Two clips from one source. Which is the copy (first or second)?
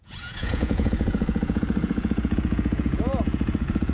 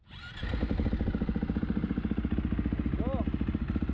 first